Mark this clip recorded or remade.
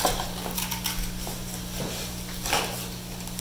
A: recorded